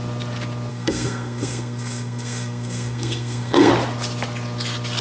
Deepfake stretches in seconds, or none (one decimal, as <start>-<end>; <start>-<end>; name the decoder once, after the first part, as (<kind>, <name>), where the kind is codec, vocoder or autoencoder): 0.7-3.7 (codec, SNAC)